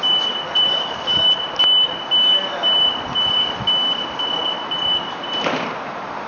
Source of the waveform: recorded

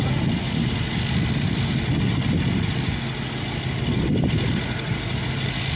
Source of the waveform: recorded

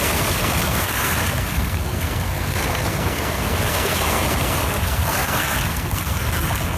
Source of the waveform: remade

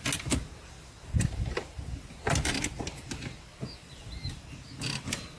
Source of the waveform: recorded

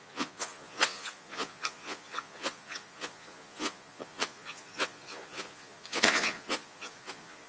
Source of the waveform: remade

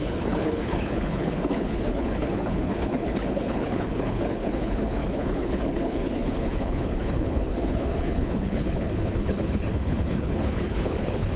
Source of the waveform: remade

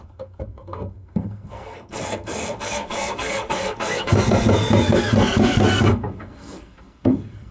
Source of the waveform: remade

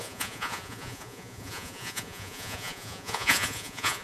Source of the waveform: remade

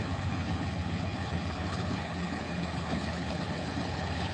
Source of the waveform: remade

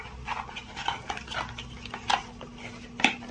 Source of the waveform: recorded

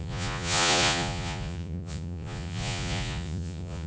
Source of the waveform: remade